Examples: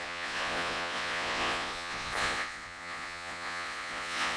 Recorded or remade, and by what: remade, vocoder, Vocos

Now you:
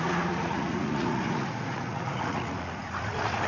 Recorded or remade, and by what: remade, vocoder, Vocos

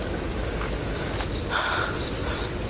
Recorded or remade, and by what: recorded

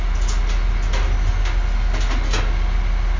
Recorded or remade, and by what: recorded